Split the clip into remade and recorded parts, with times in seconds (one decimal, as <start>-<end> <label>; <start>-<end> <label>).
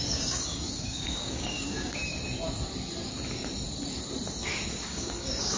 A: 0.0-2.0 remade; 2.0-4.7 recorded; 4.7-5.6 remade